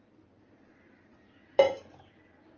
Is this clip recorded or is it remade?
remade